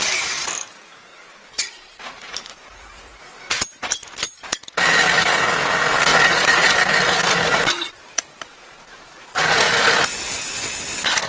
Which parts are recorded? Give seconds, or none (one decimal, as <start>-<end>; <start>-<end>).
0.0-1.1; 3.6-6.1; 6.7-8.5; 9.6-11.3